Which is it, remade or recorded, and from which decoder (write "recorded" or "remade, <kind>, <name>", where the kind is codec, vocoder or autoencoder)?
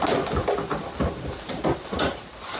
recorded